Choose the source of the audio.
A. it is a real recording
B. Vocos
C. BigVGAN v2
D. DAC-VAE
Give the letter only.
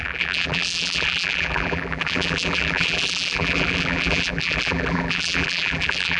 C